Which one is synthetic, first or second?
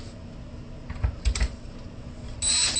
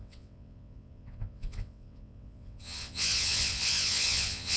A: second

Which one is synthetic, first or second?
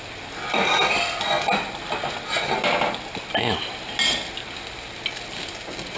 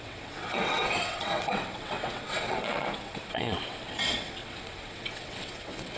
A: second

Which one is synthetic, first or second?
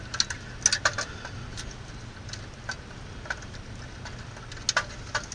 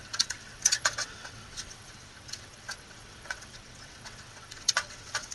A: second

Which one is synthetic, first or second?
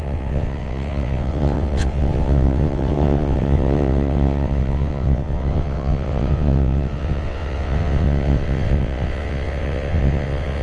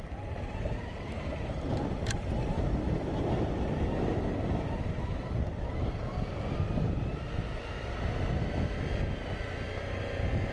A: first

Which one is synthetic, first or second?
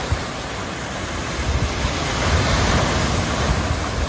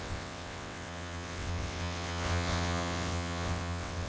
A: second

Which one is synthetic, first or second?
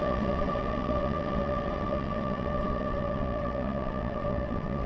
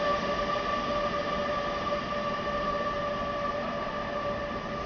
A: first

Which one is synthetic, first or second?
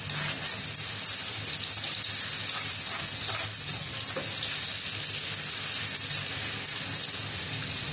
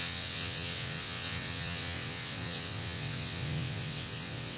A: second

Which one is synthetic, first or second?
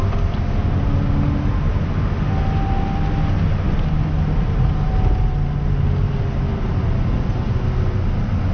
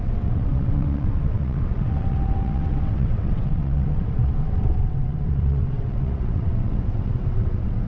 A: second